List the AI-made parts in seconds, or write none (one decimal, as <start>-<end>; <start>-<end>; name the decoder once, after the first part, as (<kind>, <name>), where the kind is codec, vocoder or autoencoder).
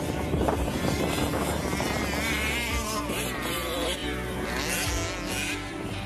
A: 0.0-4.0 (vocoder, BigVGAN v2)